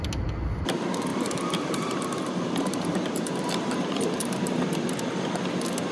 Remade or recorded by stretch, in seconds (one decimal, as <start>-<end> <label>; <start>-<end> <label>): 0.0-1.1 recorded; 1.1-4.6 remade; 4.6-5.9 recorded